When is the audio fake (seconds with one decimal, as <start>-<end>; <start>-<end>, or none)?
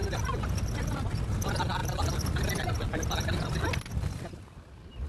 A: none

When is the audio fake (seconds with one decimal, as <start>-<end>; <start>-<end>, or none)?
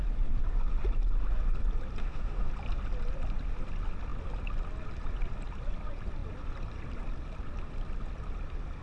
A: 2.0-2.5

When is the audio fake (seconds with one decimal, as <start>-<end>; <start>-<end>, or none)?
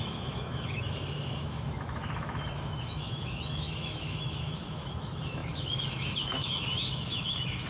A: 0.0-7.7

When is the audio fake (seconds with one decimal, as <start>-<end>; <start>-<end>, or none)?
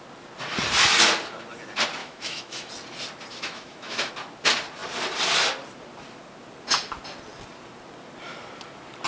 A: 2.0-2.7; 3.3-4.1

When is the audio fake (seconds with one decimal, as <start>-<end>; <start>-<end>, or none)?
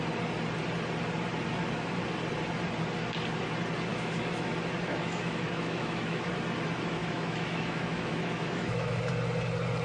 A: 3.9-4.5; 4.9-6.3; 7.0-9.1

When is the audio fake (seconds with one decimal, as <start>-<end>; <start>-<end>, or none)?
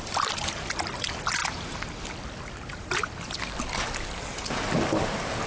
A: none